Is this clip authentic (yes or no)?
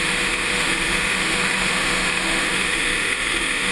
no